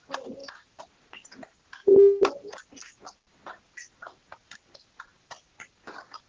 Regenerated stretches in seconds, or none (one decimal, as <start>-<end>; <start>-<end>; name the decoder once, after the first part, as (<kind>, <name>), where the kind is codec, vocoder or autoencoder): none